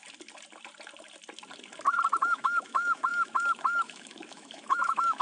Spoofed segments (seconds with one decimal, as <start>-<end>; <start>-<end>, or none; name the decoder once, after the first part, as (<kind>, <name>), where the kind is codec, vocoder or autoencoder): 2.2-5.2 (autoencoder, DAC-VAE)